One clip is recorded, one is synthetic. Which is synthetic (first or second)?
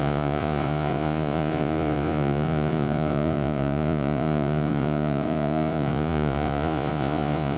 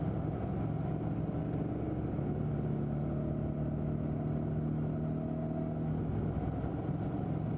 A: first